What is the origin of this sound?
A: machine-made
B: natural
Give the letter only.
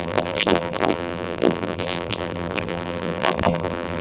A